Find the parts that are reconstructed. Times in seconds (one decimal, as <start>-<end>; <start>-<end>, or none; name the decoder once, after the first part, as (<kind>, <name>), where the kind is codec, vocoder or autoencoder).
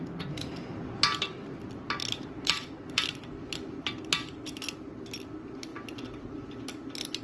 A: 2.0-3.2 (vocoder, BigVGAN v2)